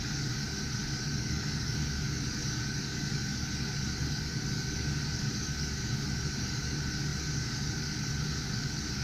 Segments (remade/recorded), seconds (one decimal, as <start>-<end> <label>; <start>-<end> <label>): 0.0-9.0 remade